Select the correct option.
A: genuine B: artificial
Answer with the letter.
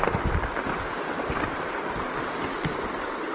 A